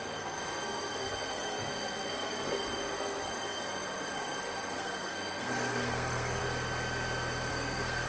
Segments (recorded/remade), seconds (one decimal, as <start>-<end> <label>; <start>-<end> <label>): 0.0-6.4 remade; 6.4-7.5 recorded; 7.5-8.1 remade